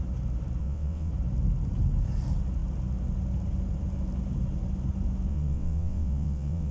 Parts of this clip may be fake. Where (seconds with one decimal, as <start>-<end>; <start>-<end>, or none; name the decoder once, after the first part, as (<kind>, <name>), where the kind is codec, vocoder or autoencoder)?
0.6-1.1 (vocoder, WaveNeXt); 5.3-6.7